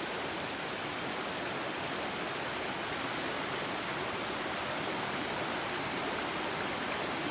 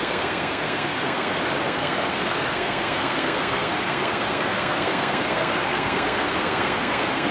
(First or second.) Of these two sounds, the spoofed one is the second